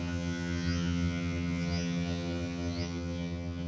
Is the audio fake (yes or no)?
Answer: yes